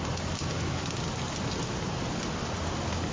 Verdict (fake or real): real